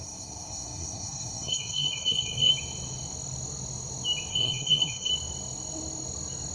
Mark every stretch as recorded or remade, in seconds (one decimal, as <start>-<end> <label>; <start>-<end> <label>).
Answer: 0.0-2.5 remade; 2.5-4.3 recorded; 4.3-5.1 remade; 5.1-6.5 recorded